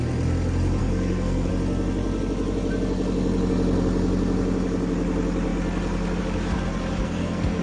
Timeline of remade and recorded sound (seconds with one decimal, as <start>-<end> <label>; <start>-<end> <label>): 0.0-0.8 recorded; 0.8-1.5 remade; 1.5-7.0 recorded; 7.0-7.6 remade